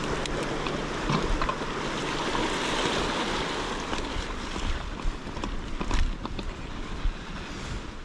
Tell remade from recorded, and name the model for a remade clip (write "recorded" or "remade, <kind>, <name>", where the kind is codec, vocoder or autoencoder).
recorded